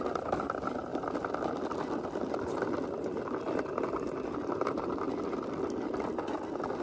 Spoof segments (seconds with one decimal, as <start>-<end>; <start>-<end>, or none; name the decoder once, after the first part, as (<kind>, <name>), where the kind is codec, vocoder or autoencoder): none